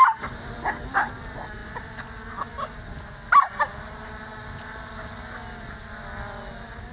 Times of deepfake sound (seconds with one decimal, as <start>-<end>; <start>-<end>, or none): none